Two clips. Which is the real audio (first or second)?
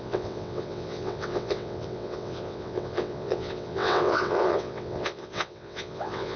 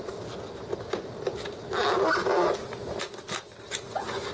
second